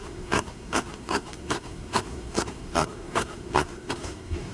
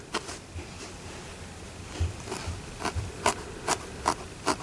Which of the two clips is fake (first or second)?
first